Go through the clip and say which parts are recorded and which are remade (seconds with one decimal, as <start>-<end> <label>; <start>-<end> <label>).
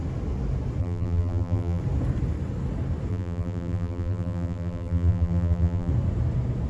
0.0-0.8 recorded; 0.8-1.8 remade; 1.8-3.1 recorded; 3.1-5.9 remade; 5.9-6.7 recorded